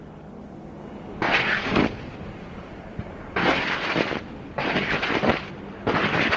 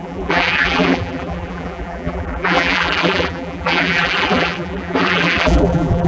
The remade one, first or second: second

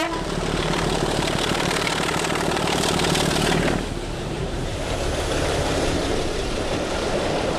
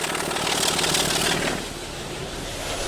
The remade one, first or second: first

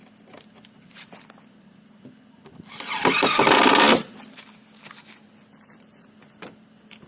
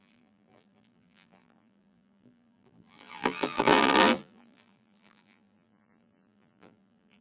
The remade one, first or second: second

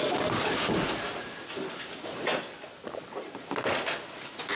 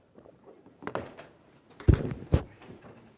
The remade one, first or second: second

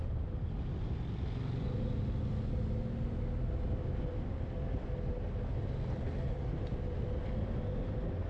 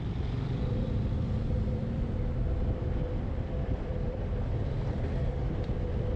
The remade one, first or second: second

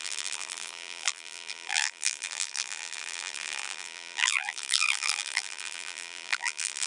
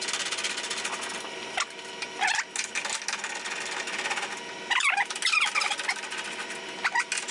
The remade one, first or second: first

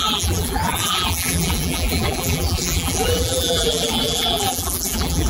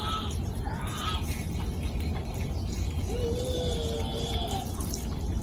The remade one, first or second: first